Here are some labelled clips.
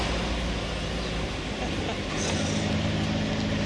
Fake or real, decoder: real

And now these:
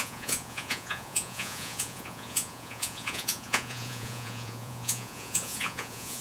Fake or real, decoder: fake, vocoder, Vocos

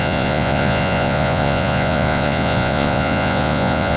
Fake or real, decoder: fake, vocoder, Vocos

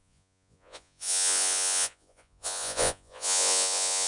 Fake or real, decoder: fake, vocoder, Vocos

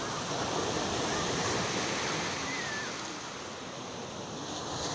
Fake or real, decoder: real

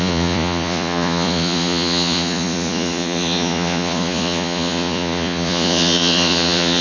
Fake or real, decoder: fake, vocoder, Vocos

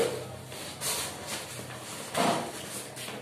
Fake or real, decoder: real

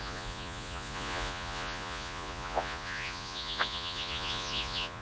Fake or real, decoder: fake, vocoder, Vocos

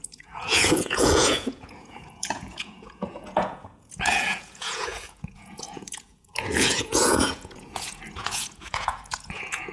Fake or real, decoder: fake, vocoder, Vocos